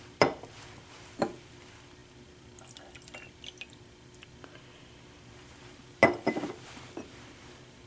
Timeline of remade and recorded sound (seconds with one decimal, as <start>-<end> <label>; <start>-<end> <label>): 0.0-7.9 recorded